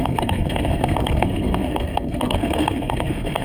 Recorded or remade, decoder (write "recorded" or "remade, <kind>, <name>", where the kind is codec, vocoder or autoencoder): remade, codec, SNAC